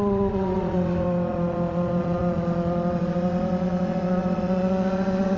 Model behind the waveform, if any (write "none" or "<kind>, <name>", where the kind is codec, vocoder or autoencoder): vocoder, Vocos